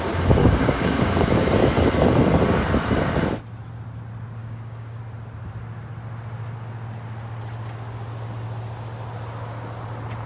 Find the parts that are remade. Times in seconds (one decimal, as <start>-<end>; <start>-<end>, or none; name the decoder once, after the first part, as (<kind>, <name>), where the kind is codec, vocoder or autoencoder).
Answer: 0.4-1.5 (codec, DAC); 4.4-5.0